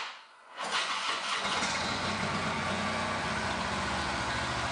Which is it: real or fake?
fake